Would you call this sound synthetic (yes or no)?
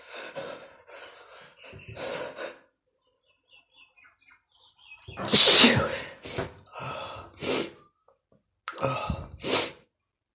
no